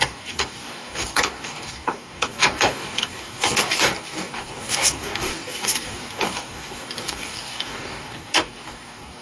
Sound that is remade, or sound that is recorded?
remade